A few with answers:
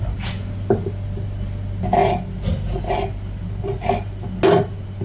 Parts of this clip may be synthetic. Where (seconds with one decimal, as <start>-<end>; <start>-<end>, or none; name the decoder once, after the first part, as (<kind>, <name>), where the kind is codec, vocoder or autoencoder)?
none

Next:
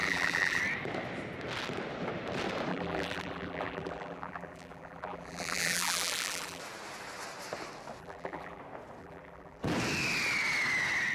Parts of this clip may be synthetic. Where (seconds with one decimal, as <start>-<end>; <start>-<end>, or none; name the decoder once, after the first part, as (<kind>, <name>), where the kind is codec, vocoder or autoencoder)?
0.0-0.6 (vocoder, BigVGAN v2); 2.7-6.6; 8.0-8.6; 9.0-9.6

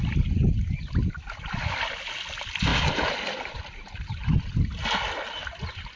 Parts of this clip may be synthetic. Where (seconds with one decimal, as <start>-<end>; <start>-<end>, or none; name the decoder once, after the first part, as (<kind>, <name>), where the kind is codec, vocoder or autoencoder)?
2.7-3.9 (vocoder, BigVGAN v2)